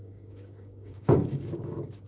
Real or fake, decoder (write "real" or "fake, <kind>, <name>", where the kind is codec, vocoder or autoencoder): fake, codec, DAC